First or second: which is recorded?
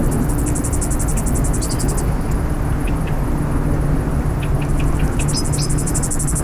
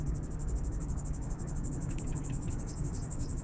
first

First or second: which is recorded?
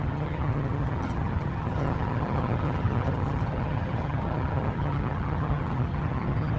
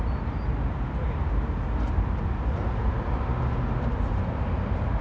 second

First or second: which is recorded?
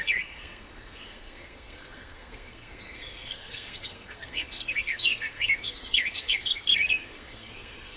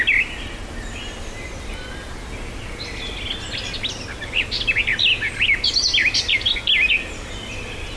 second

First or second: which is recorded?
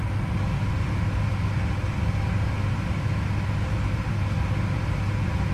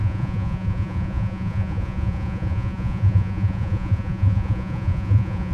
first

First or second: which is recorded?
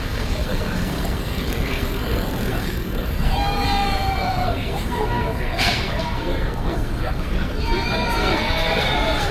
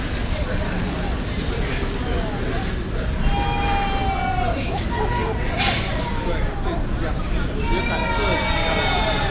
second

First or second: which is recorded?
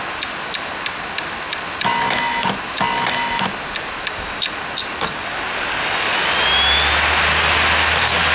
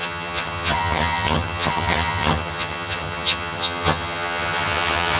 first